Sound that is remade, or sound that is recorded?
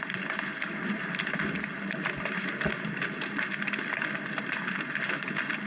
recorded